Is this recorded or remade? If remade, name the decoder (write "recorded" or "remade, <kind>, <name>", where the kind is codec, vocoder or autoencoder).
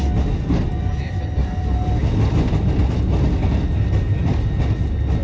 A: recorded